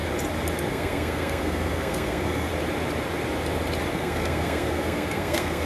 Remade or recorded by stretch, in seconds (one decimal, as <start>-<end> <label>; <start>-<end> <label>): 0.0-0.7 recorded; 0.7-2.5 remade; 2.5-3.9 recorded; 3.9-5.7 remade